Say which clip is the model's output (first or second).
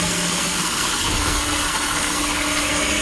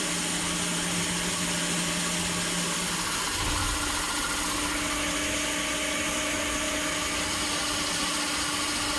first